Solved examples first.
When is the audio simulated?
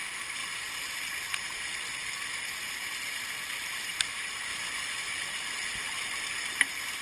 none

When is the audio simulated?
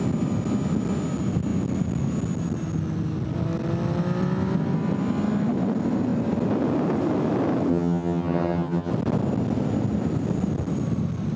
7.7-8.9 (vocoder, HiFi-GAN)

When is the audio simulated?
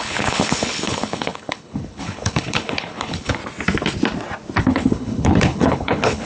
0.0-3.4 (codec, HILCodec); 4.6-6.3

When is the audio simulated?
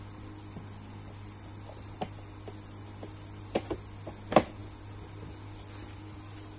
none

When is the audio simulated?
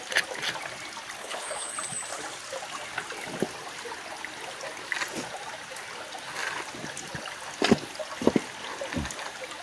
1.2-1.7 (codec, HILCodec)